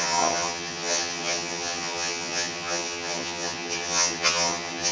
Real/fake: fake